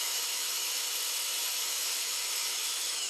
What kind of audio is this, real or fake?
fake